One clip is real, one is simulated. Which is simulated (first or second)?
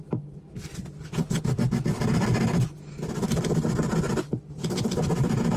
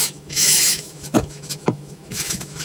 second